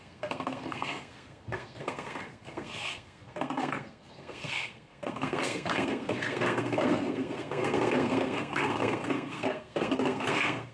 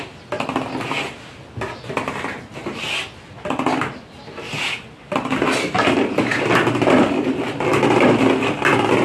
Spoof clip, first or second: first